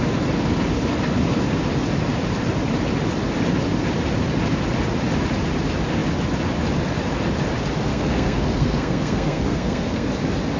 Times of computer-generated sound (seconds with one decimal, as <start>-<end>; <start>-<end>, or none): 7.9-10.1